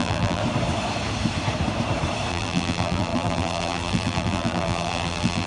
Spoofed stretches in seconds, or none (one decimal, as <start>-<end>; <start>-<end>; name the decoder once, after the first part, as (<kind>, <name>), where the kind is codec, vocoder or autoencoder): 0.0-0.4 (vocoder, BigVGAN v2); 2.3-5.5